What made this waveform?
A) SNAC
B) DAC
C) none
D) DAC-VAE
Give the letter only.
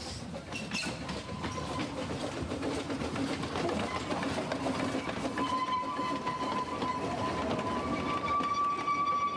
C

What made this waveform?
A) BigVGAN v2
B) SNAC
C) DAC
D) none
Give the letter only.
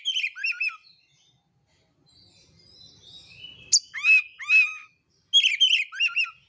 D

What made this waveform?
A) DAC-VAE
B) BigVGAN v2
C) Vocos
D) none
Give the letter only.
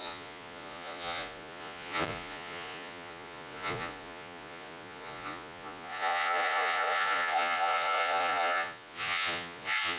C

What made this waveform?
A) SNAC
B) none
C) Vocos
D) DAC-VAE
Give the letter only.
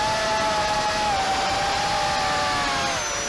B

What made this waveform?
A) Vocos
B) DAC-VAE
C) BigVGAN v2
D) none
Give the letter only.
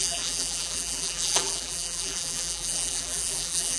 C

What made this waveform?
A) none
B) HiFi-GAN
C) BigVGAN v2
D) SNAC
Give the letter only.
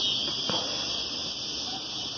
A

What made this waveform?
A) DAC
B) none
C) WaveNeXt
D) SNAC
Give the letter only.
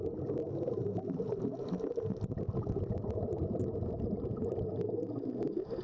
B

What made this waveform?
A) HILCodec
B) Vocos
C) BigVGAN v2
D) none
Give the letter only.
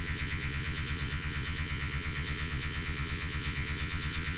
B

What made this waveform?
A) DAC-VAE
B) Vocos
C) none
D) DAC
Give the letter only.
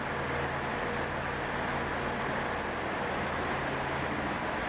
C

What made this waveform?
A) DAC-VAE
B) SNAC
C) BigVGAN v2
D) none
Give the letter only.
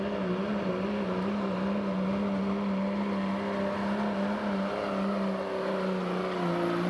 D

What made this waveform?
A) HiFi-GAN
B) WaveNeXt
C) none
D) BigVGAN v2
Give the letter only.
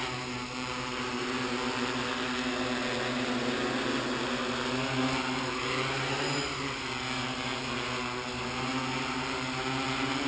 C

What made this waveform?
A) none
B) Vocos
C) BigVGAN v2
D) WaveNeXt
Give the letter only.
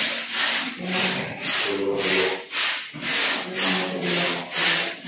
A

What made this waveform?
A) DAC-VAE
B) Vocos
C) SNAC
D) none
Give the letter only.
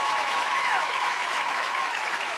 A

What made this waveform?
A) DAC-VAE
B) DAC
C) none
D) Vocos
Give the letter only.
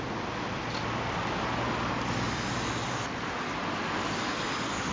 C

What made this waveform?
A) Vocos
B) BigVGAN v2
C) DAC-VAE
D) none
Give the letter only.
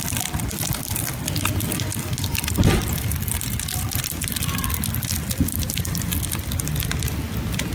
D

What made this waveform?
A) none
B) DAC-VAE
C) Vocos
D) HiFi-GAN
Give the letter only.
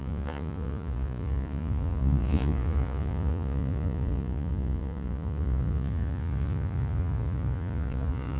C